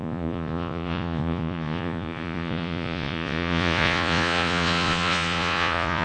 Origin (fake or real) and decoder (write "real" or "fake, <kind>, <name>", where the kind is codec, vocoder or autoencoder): fake, vocoder, Vocos